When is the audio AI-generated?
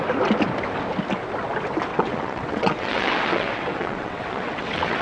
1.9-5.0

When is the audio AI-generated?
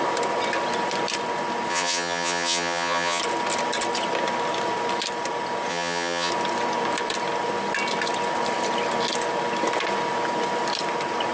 1.7-3.2; 5.7-6.3